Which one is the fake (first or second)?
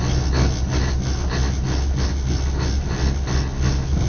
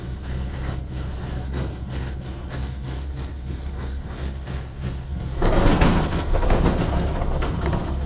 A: second